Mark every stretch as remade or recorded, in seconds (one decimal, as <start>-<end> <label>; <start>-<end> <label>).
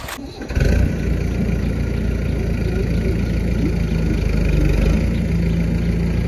0.0-6.3 recorded